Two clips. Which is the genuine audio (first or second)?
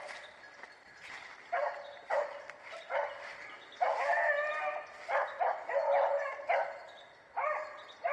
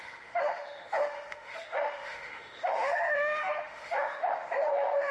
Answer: first